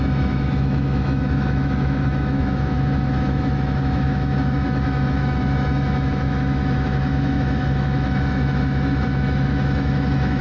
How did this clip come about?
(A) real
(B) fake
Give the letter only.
B